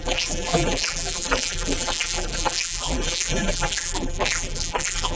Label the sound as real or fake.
fake